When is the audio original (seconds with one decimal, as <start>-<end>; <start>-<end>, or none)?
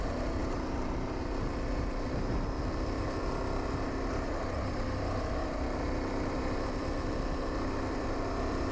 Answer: 0.0-8.7